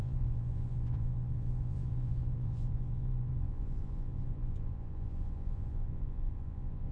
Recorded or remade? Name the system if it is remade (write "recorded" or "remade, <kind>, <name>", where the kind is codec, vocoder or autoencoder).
remade, vocoder, Vocos